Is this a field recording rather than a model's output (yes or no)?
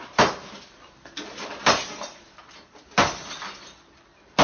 yes